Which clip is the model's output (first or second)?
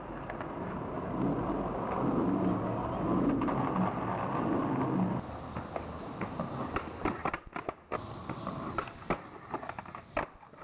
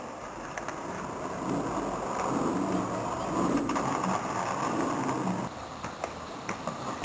second